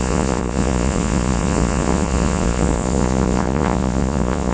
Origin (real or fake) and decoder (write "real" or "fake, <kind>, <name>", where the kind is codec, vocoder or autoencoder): fake, vocoder, Vocos